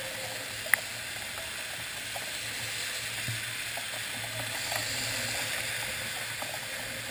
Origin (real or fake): real